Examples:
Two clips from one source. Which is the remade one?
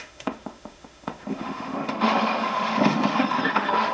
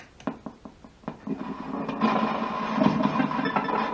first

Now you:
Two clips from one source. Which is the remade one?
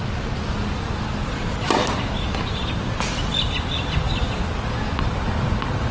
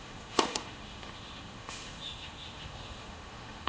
second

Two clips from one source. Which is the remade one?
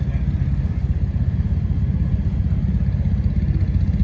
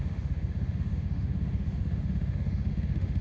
second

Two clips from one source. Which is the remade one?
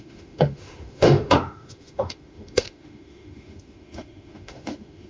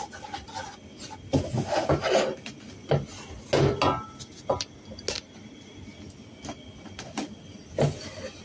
first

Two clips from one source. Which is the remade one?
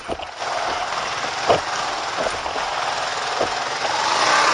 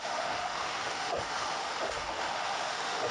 second